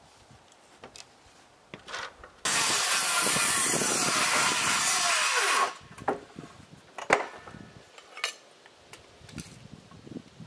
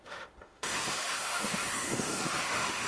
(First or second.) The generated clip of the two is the second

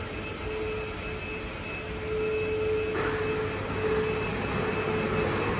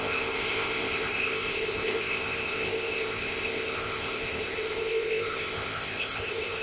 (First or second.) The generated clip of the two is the second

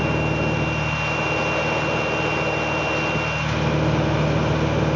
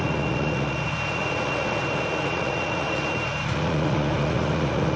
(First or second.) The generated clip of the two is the second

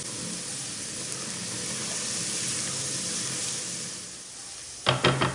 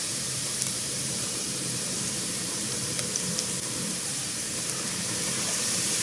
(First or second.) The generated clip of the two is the second